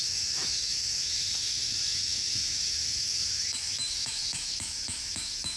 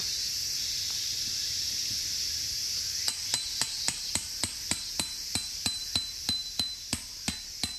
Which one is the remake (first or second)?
first